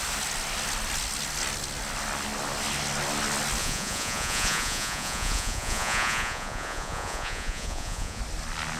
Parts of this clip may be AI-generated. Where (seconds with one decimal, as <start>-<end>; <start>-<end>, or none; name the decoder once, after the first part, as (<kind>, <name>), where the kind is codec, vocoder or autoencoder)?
3.6-8.2 (vocoder, Vocos)